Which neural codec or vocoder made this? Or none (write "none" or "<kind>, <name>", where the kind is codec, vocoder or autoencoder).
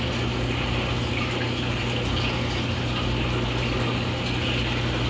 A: none